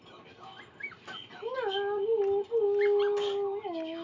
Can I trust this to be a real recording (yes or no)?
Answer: yes